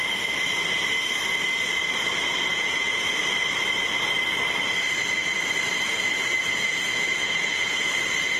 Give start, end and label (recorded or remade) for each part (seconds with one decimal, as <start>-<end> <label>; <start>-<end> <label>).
0.0-2.5 recorded; 2.5-3.2 remade; 3.2-6.4 recorded; 6.4-7.9 remade; 7.9-8.4 recorded

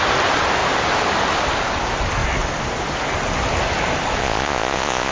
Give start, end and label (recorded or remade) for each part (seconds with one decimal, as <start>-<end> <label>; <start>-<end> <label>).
0.0-4.2 recorded; 4.2-5.1 remade

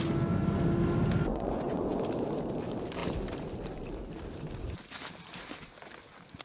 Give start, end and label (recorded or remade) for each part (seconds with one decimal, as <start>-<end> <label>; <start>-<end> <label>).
0.0-1.3 recorded; 1.3-2.0 remade; 2.0-6.4 recorded

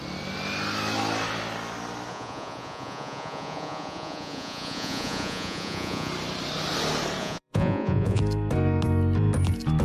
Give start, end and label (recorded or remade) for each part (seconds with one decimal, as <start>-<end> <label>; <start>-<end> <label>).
0.0-2.1 recorded; 2.1-6.1 remade; 6.1-7.2 recorded; 7.2-8.2 remade; 8.2-9.8 recorded

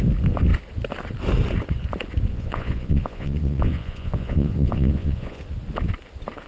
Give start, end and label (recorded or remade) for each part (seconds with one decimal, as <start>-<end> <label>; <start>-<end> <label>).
0.0-2.3 recorded; 2.3-5.4 remade; 5.4-6.5 recorded

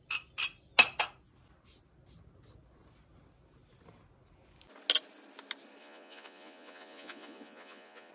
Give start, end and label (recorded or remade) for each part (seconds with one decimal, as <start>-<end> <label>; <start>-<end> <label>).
0.0-5.8 recorded; 5.8-8.1 remade

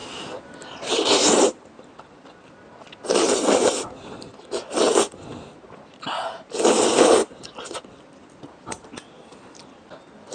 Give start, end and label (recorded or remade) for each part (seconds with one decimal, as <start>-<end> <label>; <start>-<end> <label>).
0.0-10.3 recorded